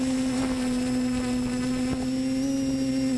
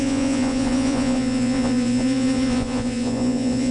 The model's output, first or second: second